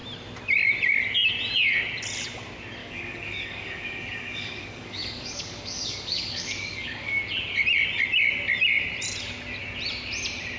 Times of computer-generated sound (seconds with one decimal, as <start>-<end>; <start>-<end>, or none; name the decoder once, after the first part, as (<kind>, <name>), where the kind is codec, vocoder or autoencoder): 2.8-7.2 (codec, DAC)